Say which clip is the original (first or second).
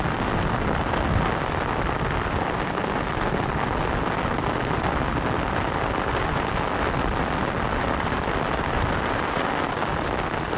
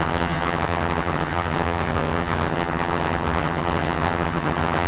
first